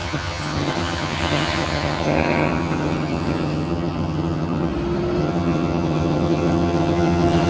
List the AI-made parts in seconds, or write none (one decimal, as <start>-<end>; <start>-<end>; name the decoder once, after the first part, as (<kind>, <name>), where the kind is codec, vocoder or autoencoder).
0.0-4.7 (vocoder, HiFi-GAN); 5.2-7.5